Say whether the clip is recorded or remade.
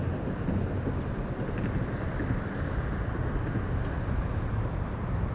recorded